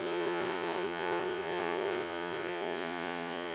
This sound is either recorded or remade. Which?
remade